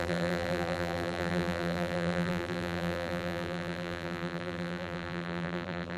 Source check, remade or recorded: remade